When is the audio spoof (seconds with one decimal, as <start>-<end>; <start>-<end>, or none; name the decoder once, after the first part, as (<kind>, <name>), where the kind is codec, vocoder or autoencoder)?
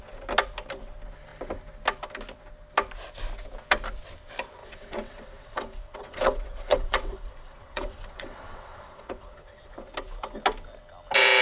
4.6-9.7 (vocoder, WaveNeXt)